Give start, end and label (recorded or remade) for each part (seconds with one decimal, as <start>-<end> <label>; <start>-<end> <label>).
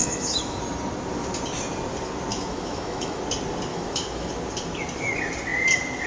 0.0-0.6 remade; 0.6-2.3 recorded; 2.3-3.2 remade; 3.2-3.7 recorded; 3.7-4.3 remade; 4.3-6.1 recorded